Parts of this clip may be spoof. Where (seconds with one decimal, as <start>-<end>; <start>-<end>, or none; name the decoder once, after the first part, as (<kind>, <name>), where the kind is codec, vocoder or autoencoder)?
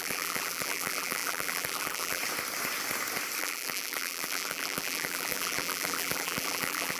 0.0-2.2 (vocoder, BigVGAN v2); 3.4-7.0